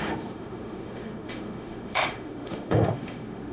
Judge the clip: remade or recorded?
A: remade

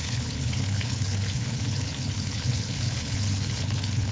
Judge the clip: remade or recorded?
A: remade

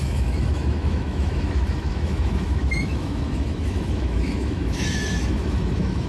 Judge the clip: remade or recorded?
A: remade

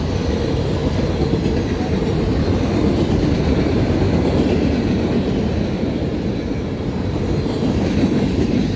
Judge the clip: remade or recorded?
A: recorded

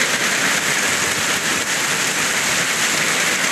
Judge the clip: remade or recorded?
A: recorded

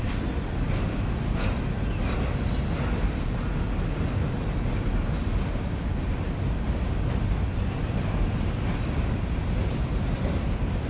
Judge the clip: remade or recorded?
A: recorded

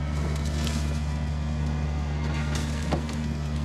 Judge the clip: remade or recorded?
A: remade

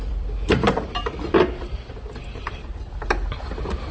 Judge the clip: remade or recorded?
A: remade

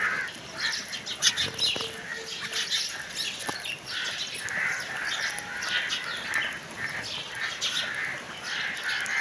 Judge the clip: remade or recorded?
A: recorded